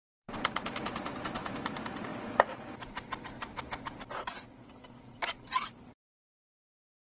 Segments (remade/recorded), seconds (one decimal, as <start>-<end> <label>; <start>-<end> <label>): 0.0-2.1 remade; 2.1-5.0 recorded; 5.0-7.1 remade